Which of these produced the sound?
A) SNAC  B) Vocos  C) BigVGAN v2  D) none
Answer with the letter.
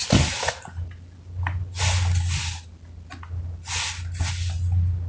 D